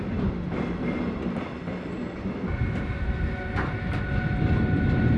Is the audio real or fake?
real